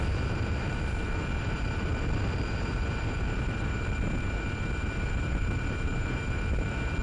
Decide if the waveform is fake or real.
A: fake